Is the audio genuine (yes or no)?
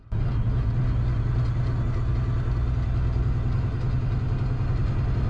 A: yes